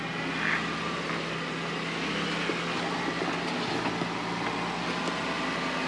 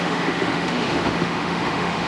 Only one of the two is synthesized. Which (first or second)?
second